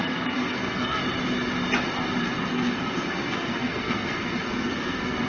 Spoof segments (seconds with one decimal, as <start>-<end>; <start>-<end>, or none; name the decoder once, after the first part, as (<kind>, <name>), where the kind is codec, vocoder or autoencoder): 0.0-1.0 (codec, SNAC); 2.2-5.3